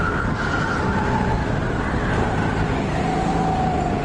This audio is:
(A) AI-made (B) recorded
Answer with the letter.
B